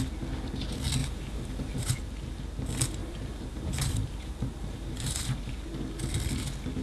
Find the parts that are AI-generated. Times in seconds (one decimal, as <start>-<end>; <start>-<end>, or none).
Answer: 1.0-1.9; 3.0-5.5

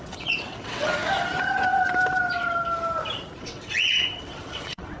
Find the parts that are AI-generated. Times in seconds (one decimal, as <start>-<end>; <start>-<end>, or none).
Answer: 0.0-0.9; 3.4-5.0

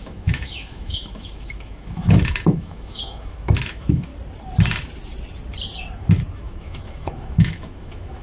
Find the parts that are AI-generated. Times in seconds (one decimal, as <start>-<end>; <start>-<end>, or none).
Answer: 0.0-4.1; 6.3-8.2